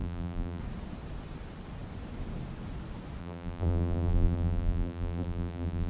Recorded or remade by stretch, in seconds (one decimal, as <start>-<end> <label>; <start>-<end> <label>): 0.0-0.6 remade; 0.6-3.2 recorded; 3.2-5.9 remade